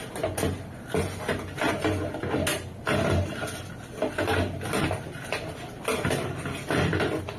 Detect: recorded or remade recorded